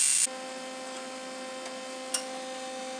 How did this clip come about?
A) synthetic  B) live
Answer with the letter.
B